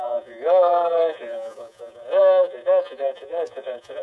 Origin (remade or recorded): remade